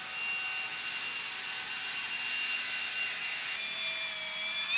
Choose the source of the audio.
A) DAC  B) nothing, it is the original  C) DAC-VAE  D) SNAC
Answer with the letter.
B